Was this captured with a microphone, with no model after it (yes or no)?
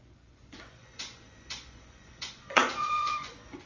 no